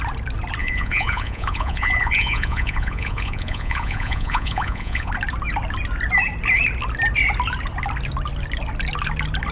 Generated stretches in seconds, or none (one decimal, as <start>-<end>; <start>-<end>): 0.6-5.1